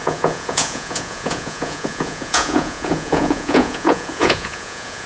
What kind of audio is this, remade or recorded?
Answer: remade